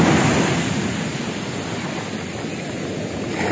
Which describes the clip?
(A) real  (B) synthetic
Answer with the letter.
A